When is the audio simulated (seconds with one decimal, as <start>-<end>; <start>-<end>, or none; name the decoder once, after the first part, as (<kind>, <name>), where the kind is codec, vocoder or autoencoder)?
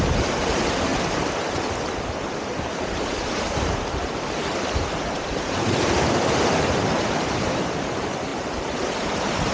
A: 0.0-0.9 (vocoder, BigVGAN v2); 2.3-9.5